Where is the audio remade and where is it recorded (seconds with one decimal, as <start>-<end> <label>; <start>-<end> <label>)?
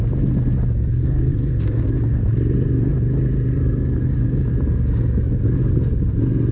0.0-1.0 recorded; 1.0-1.8 remade; 1.8-6.5 recorded